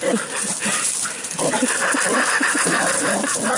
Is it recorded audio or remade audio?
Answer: recorded